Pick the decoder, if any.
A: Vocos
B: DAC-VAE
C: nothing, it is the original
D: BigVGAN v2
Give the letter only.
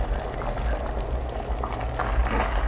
C